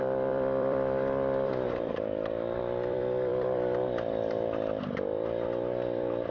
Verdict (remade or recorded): remade